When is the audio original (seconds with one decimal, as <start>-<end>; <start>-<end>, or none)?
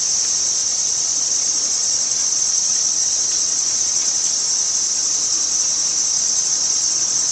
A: 0.0-0.6; 4.3-6.1